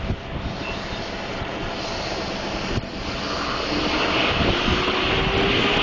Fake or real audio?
real